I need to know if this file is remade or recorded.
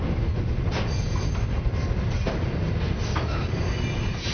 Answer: recorded